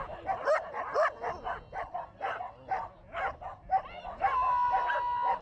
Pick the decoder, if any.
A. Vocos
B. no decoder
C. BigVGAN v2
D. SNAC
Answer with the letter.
B